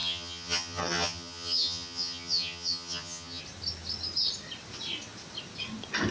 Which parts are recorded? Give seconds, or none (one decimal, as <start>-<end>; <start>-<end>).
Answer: 3.4-6.1